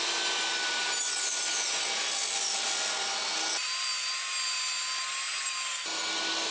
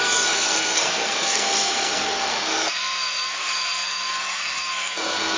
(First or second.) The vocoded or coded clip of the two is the second